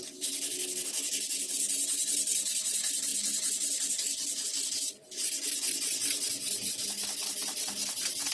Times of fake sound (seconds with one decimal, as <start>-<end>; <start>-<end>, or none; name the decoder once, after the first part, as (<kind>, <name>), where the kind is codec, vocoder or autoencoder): none